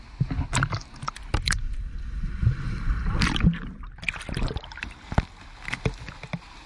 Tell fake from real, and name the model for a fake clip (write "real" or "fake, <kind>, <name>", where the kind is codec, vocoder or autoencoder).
real